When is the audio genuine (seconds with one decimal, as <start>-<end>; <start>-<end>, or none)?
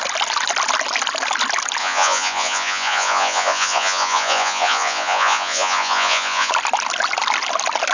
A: 0.0-1.8; 6.5-7.9